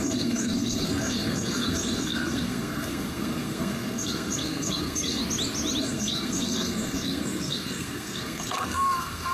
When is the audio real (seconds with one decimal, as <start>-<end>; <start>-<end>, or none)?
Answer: 5.2-5.8